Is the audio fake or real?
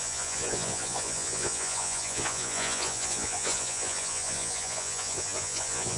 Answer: fake